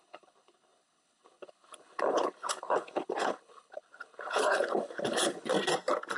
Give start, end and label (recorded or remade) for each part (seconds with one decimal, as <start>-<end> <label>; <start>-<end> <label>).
0.0-5.5 remade; 5.5-6.2 recorded